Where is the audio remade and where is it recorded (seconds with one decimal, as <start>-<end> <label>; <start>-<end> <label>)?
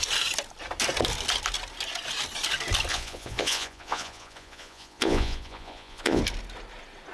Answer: 0.0-2.9 recorded; 2.9-6.2 remade; 6.2-7.1 recorded